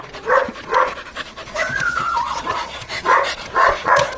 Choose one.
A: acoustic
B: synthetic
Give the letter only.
B